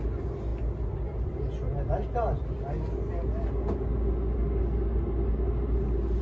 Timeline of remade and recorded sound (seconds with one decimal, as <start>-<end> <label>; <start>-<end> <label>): 0.0-0.5 recorded; 0.5-1.3 remade; 1.3-6.2 recorded